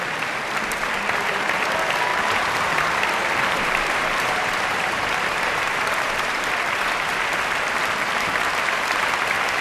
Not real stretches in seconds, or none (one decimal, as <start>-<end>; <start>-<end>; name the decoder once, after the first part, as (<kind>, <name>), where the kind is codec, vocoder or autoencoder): 2.1-2.8 (vocoder, BigVGAN v2); 3.2-6.6